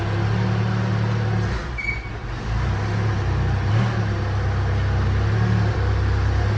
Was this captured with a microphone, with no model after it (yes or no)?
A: yes